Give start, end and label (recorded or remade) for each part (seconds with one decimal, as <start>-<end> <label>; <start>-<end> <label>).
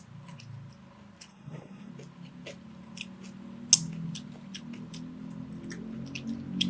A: 0.0-1.3 recorded; 1.3-1.9 remade; 1.9-6.7 recorded